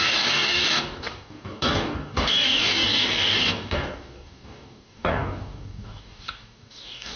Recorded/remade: remade